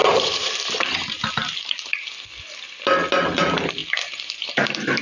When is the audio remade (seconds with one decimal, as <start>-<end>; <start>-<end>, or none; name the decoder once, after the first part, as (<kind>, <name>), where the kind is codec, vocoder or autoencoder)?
0.0-1.3 (vocoder, BigVGAN v2); 3.8-4.5